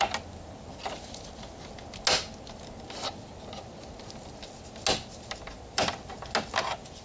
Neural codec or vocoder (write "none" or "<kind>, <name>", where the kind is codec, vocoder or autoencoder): none